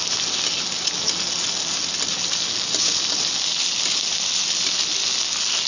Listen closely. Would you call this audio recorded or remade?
recorded